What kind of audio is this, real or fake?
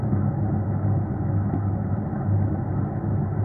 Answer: real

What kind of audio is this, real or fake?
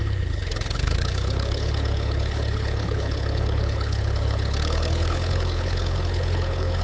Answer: fake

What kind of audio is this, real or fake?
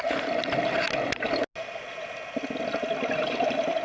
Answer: real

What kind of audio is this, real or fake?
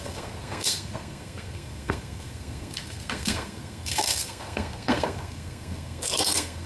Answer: fake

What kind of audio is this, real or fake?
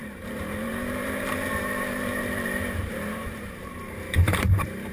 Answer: fake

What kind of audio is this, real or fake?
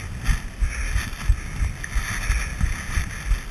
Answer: real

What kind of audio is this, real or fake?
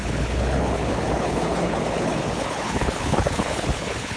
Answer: fake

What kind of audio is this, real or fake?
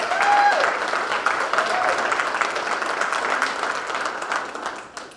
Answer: real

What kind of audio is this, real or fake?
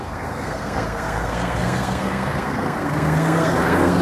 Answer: fake